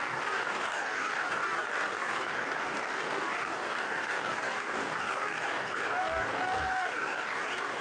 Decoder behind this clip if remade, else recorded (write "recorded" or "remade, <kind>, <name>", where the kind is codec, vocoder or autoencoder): remade, codec, DAC